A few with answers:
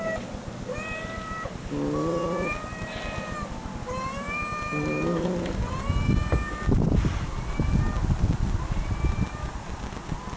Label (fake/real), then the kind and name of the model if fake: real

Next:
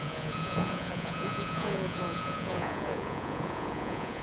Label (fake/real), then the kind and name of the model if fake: fake, vocoder, Vocos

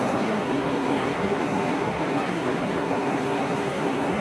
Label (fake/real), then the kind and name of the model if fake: fake, codec, SNAC